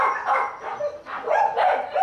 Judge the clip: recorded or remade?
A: recorded